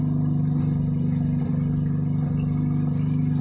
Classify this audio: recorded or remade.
recorded